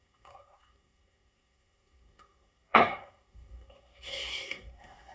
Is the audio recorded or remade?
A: remade